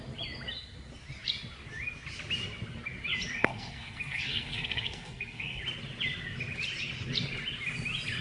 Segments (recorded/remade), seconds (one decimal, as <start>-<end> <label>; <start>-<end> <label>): 0.0-3.4 recorded; 3.4-5.6 remade; 5.6-8.2 recorded